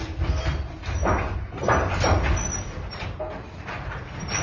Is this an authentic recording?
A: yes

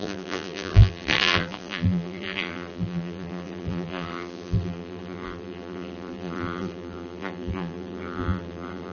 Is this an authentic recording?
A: no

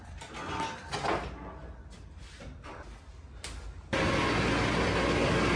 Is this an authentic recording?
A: yes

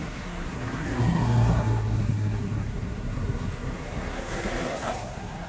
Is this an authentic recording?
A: no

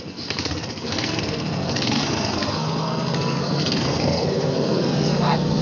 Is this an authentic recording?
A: no